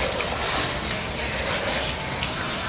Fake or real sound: real